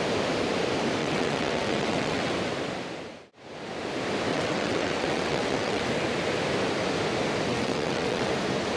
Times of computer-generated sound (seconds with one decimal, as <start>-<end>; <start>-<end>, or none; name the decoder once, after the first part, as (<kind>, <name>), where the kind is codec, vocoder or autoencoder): 1.0-2.3 (vocoder, WaveNeXt); 4.3-5.8; 7.5-8.3